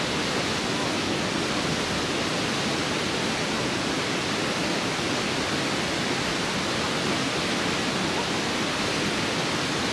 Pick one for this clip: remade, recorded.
recorded